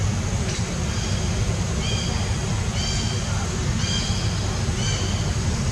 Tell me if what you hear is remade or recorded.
recorded